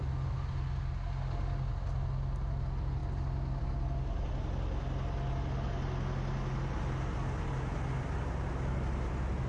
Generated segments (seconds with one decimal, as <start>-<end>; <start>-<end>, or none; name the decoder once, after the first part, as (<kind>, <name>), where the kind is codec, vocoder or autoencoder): none